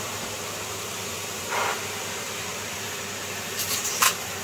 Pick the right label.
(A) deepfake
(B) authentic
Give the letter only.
A